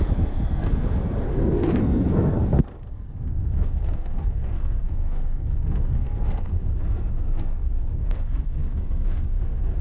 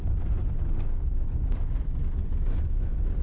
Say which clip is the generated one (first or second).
first